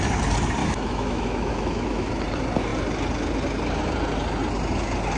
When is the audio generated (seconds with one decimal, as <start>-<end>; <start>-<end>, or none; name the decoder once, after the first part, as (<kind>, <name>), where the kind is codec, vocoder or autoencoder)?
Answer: 0.6-2.1 (autoencoder, DAC-VAE)